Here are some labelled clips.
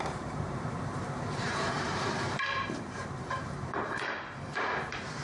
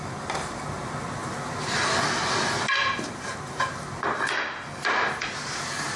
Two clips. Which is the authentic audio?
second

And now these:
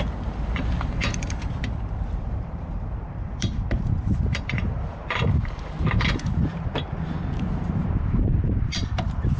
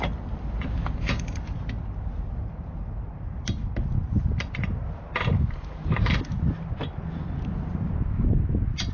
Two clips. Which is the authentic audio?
second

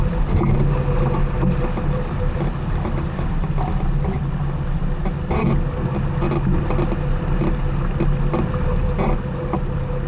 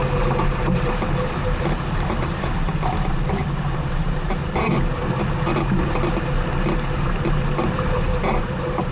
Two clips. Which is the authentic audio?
first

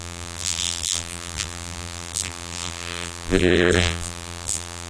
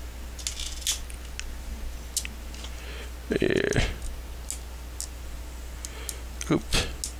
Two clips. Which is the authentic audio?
second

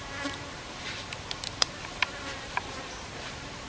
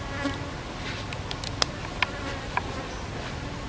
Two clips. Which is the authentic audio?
second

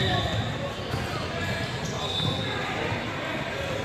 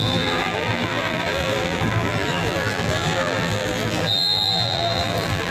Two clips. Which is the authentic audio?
first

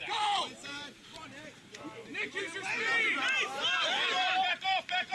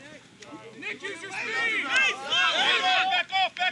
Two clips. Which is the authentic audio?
second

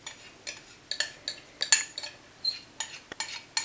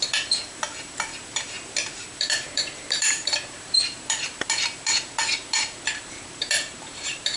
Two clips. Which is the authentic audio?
first